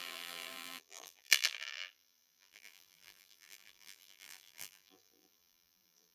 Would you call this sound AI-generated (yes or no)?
yes